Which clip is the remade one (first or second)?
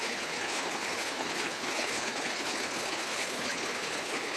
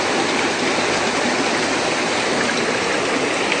first